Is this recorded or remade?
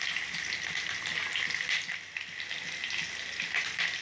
recorded